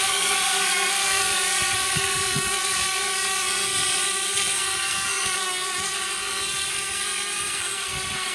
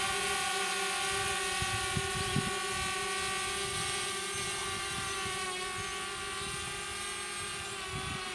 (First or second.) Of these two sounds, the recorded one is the second